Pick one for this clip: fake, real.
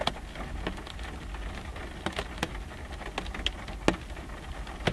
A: real